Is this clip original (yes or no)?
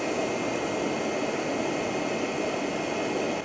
yes